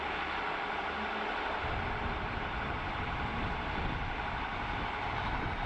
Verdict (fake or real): real